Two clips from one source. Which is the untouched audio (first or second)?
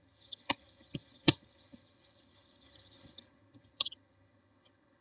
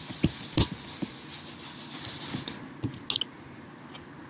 second